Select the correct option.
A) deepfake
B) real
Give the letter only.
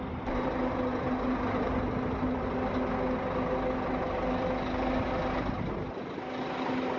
B